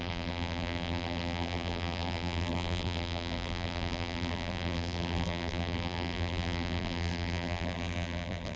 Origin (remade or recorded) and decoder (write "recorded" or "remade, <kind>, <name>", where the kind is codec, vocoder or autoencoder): remade, vocoder, BigVGAN v2